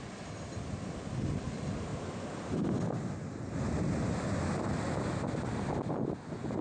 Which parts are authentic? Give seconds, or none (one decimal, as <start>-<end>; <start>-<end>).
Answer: 0.0-6.6